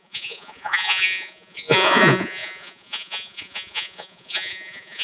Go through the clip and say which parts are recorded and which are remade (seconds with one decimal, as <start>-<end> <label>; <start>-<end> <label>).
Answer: 0.0-5.0 remade